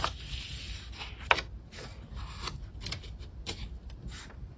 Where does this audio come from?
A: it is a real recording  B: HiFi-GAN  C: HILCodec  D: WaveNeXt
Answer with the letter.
A